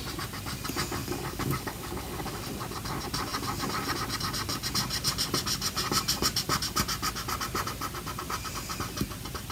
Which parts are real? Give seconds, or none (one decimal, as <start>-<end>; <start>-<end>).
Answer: 0.0-1.0; 2.4-9.5